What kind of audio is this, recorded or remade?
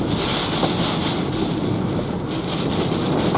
recorded